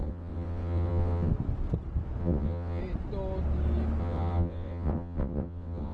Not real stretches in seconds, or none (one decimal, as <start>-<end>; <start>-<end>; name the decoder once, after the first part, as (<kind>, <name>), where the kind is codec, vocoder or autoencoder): 0.0-1.3 (vocoder, WaveNeXt); 2.2-2.8; 4.0-5.9